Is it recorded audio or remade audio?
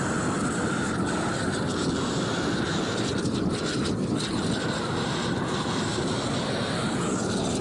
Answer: recorded